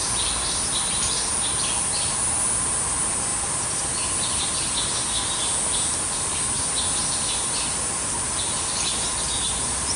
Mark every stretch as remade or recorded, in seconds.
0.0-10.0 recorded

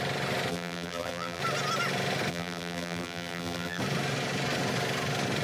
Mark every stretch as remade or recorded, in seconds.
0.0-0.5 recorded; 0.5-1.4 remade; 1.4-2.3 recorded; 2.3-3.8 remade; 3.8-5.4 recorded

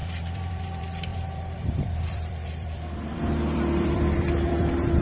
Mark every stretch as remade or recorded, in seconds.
0.0-5.0 remade